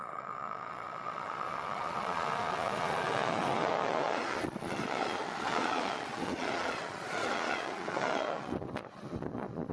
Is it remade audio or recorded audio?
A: remade